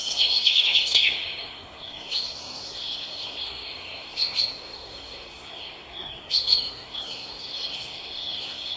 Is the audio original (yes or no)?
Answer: no